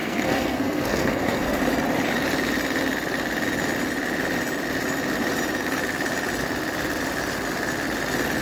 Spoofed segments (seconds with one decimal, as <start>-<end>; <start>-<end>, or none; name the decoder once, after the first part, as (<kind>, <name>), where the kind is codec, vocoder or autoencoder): 0.0-1.6 (codec, SNAC)